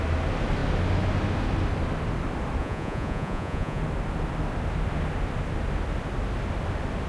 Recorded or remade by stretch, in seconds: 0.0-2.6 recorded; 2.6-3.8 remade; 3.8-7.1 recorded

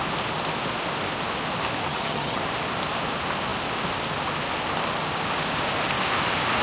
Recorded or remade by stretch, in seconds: 0.0-1.9 recorded; 1.9-2.4 remade; 2.4-6.6 recorded